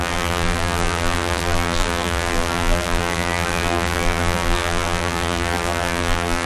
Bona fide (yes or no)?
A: no